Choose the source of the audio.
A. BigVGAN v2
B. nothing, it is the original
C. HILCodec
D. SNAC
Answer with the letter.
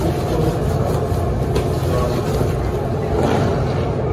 B